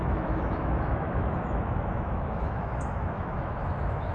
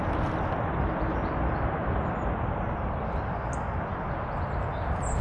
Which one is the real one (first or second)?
second